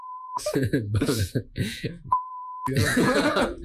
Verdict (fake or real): fake